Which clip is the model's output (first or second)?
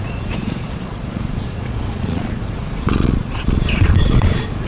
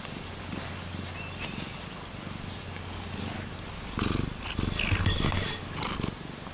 first